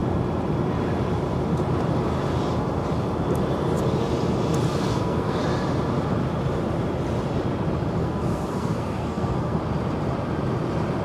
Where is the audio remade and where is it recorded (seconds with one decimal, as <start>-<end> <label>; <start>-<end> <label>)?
0.0-4.9 recorded; 4.9-5.4 remade; 5.4-8.0 recorded; 8.0-9.6 remade; 9.6-11.0 recorded